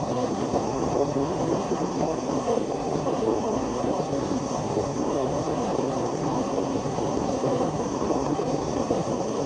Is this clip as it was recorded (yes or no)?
no